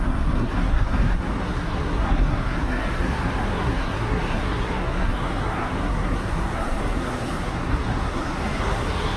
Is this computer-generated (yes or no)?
yes